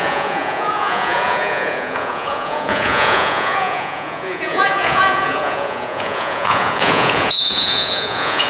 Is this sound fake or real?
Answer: fake